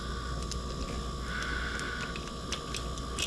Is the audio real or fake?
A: real